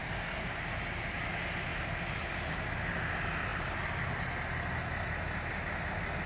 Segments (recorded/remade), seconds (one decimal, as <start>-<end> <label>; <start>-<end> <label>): 0.0-0.5 remade; 0.5-6.3 recorded